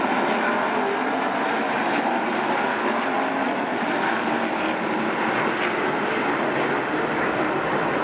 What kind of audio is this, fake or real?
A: real